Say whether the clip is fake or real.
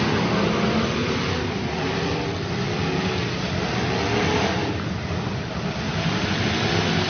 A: real